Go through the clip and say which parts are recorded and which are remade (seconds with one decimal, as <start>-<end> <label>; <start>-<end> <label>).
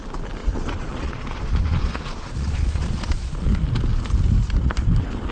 0.0-0.4 recorded; 0.4-3.5 remade; 3.5-5.3 recorded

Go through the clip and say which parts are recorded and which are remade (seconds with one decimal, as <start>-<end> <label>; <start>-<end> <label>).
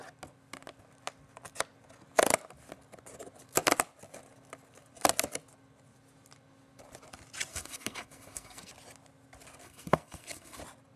0.0-7.5 recorded; 7.5-8.7 remade; 8.7-9.6 recorded; 9.6-10.6 remade; 10.6-11.0 recorded